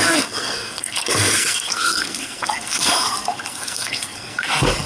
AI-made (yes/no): yes